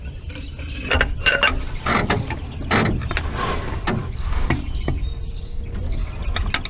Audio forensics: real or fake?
real